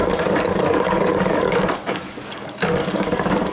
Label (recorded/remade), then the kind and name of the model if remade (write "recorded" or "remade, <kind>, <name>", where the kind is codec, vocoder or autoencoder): remade, codec, DAC